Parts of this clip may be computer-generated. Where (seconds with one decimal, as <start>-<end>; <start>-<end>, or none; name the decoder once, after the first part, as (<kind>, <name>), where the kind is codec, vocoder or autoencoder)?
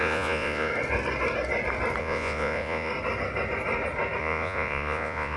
0.0-0.7 (vocoder, Vocos); 2.0-2.9; 4.2-5.4